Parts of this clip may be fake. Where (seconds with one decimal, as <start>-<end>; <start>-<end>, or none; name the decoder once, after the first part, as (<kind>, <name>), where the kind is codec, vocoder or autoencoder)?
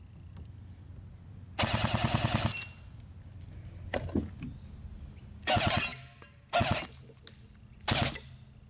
none